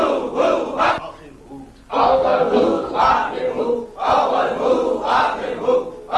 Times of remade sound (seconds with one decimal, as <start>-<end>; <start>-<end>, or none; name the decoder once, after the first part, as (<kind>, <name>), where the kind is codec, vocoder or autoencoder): 2.1-2.9 (codec, SNAC)